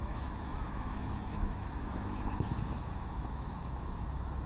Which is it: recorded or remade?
remade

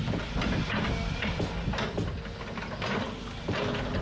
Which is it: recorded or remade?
recorded